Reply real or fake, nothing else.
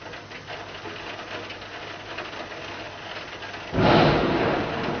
real